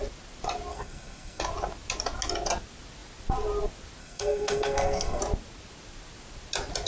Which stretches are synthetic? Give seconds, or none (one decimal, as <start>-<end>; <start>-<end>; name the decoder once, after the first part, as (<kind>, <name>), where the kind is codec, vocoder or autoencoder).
0.7-1.4 (codec, SNAC); 4.0-5.2